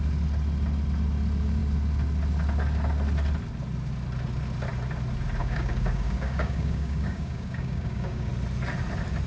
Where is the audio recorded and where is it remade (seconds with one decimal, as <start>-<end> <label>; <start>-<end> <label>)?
0.0-5.4 recorded; 5.4-8.3 remade; 8.3-9.3 recorded